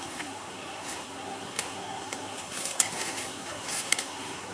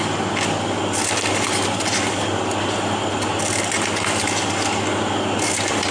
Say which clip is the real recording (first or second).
second